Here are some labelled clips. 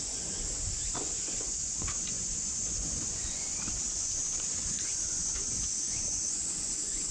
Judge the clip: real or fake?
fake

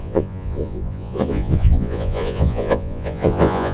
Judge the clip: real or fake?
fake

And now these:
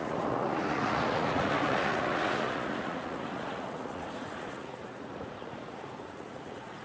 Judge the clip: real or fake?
fake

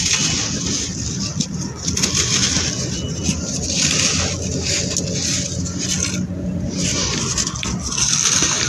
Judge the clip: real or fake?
real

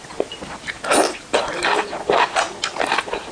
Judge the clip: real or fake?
real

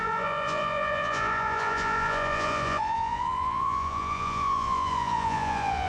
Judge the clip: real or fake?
fake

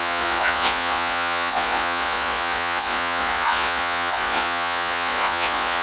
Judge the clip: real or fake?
fake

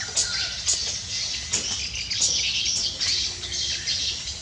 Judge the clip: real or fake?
real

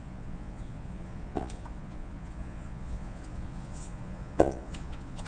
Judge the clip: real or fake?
fake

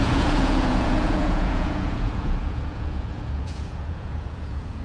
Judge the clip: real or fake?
fake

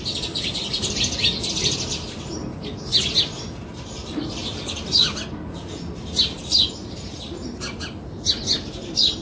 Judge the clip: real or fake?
real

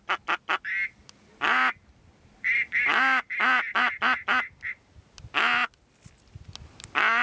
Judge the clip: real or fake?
real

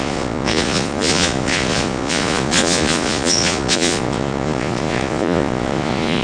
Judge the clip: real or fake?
fake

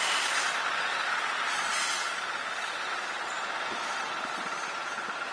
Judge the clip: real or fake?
real